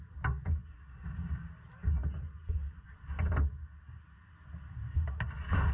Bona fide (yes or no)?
yes